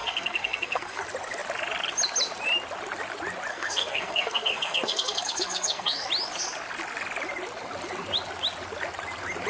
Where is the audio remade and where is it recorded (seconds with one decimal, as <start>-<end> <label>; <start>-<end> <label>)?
0.0-1.0 remade; 1.0-3.5 recorded; 3.5-6.1 remade; 6.1-9.5 recorded